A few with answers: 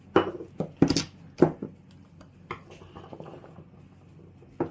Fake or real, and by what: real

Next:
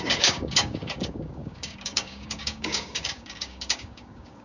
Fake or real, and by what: fake, codec, DAC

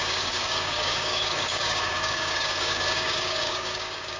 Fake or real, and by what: fake, codec, DAC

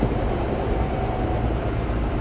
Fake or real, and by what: real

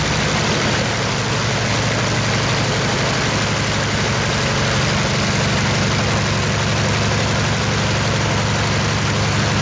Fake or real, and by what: real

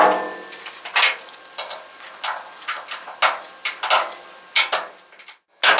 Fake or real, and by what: real